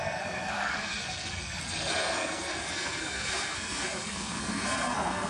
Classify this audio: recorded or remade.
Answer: remade